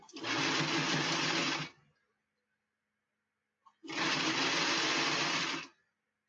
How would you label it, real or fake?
real